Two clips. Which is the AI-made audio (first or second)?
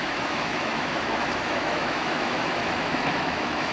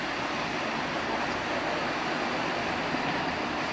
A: first